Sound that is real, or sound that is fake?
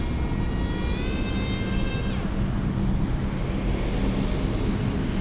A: real